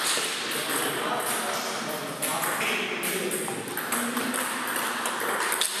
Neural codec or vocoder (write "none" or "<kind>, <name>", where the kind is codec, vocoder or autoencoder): none